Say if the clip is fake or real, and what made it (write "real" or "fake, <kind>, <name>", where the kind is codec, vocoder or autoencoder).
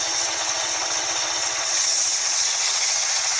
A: fake, vocoder, WaveNeXt